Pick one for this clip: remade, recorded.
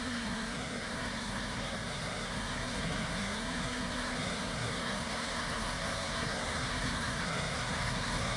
remade